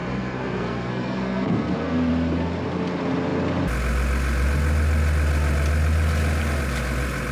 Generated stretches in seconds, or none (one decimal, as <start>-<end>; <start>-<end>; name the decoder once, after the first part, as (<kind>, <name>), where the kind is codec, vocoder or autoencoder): 0.0-2.1 (codec, SNAC)